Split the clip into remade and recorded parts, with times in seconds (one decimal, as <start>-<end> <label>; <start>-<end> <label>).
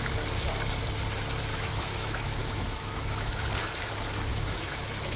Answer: 0.0-1.5 recorded; 1.5-3.4 remade; 3.4-4.3 recorded; 4.3-5.2 remade